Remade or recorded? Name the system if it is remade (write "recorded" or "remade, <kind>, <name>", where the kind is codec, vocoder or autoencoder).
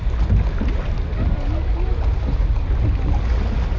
recorded